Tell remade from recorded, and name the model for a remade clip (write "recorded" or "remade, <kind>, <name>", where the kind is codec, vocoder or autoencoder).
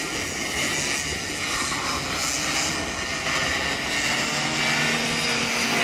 recorded